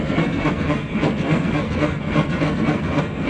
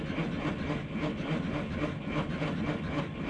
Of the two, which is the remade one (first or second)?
first